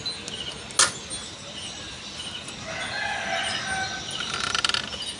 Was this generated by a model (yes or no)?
no